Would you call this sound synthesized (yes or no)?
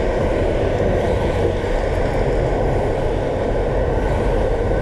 no